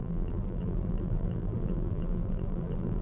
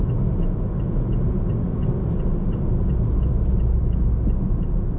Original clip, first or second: second